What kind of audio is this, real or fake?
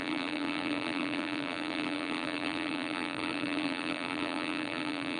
fake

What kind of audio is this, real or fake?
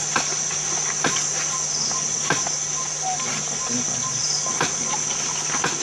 real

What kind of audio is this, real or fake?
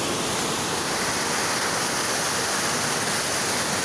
real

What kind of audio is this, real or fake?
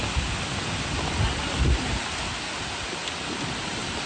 real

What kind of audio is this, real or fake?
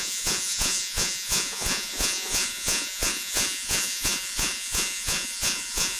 fake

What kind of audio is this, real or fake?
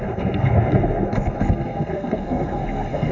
fake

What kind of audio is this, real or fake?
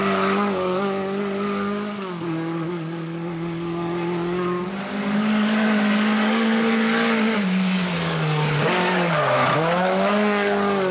fake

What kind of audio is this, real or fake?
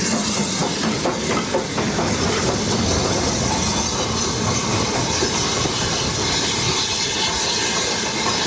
real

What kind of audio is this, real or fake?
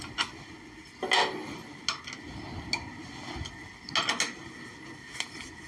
real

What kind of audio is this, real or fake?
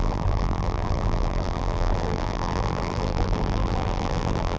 fake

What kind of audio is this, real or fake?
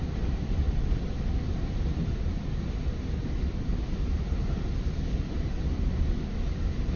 real